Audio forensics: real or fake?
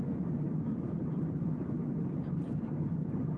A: real